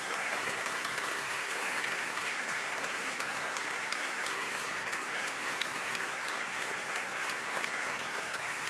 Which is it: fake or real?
fake